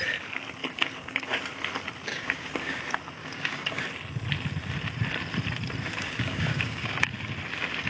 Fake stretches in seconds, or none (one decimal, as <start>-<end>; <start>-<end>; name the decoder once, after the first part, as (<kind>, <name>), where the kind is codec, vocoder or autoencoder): 0.6-1.4 (codec, DAC); 2.1-2.8; 3.2-3.8; 5.9-7.1